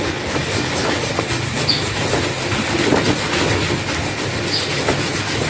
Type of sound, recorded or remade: recorded